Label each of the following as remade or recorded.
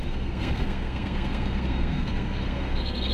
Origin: remade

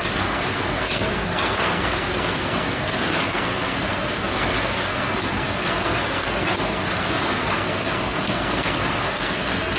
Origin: remade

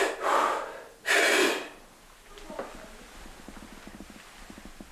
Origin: recorded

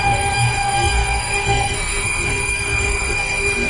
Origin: remade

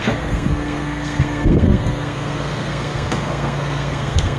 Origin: remade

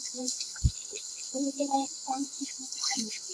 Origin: remade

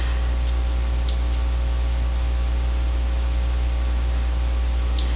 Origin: recorded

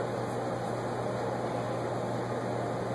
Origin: recorded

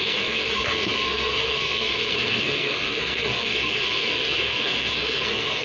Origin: remade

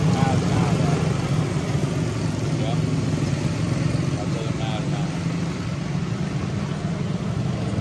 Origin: recorded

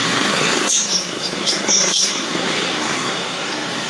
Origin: remade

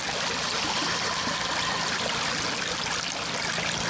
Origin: recorded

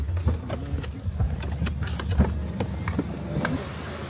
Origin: recorded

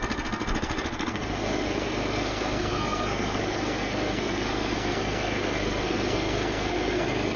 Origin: remade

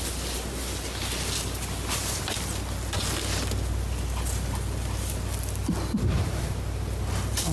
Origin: recorded